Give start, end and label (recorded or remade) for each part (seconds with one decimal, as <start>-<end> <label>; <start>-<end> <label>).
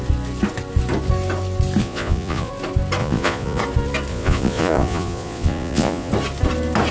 0.0-1.8 recorded; 1.8-2.5 remade; 2.5-3.0 recorded; 3.0-3.6 remade; 3.6-4.1 recorded; 4.1-6.1 remade; 6.1-6.9 recorded